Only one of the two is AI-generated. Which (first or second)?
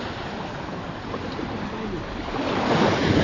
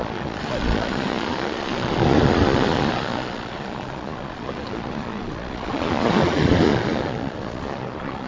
second